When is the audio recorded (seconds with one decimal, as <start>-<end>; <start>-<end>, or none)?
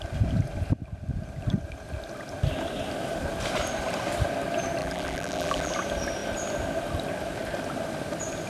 0.0-4.8; 5.7-8.5